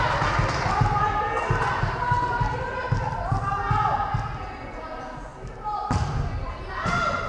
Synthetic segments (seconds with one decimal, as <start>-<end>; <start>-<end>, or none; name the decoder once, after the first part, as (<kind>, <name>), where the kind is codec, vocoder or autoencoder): none